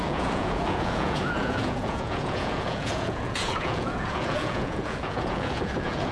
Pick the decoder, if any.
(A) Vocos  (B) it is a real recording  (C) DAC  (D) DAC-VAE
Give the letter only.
A